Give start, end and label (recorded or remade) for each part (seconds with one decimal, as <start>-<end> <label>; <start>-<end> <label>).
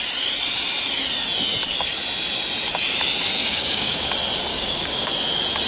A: 0.0-3.4 recorded; 3.4-4.1 remade; 4.1-4.5 recorded; 4.5-5.1 remade; 5.1-5.7 recorded